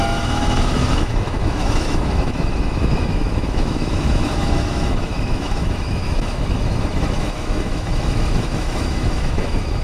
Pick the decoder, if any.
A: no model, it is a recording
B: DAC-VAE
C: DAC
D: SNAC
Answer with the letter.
B